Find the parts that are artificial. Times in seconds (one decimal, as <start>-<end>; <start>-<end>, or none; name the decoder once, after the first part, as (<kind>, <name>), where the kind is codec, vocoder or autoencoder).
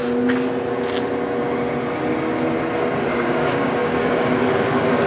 3.1-5.1 (codec, DAC)